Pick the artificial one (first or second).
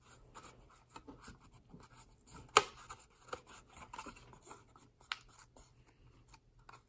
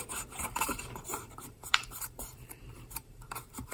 second